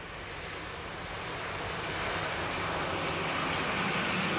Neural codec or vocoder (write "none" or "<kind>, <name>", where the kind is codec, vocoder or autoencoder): none